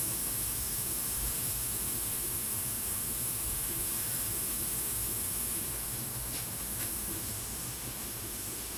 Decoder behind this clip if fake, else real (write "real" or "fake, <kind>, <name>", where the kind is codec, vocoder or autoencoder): fake, autoencoder, DAC-VAE